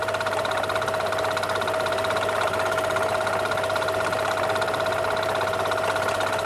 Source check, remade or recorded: recorded